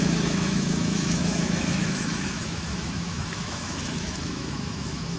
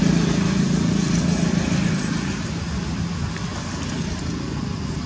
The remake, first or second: first